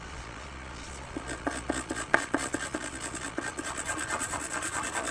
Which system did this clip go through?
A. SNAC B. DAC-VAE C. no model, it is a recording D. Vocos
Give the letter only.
D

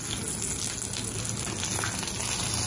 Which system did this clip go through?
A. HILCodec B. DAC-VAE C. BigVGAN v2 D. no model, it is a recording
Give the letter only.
D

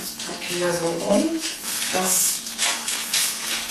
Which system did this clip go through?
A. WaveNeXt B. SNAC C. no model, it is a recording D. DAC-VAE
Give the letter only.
B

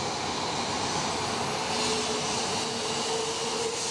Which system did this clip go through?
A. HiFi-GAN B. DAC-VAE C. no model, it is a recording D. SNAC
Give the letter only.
C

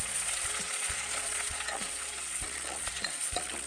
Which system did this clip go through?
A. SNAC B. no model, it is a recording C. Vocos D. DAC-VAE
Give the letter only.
C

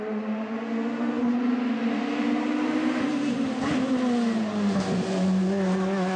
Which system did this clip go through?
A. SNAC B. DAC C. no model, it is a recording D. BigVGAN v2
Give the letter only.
C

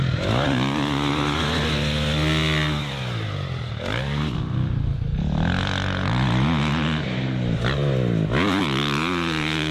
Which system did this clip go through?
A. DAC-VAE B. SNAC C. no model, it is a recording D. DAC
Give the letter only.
C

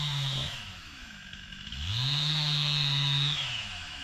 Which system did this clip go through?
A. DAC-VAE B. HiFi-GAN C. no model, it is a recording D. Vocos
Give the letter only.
A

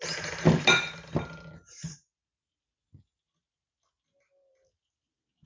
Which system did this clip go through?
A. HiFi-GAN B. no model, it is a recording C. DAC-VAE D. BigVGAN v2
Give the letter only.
B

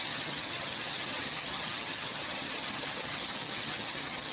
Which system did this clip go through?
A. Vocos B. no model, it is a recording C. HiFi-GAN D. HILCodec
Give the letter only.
C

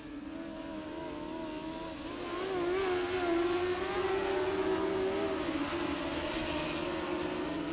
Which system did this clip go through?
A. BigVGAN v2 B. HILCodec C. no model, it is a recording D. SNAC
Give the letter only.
C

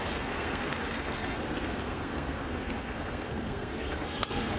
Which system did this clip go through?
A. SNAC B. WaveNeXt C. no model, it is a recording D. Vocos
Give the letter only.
A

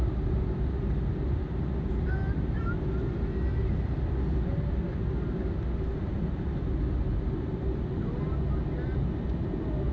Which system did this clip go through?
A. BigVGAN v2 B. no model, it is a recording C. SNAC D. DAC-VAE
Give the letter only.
B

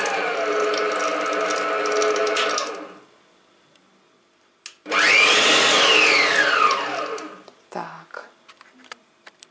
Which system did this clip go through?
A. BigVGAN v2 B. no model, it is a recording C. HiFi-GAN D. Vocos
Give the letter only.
B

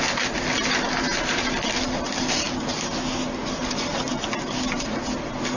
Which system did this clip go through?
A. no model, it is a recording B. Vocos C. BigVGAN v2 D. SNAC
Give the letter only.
A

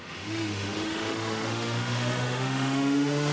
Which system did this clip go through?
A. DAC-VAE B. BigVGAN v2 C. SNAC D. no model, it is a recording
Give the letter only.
A